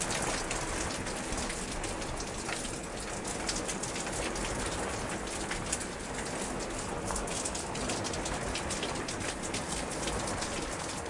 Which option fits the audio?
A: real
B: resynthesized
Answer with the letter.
A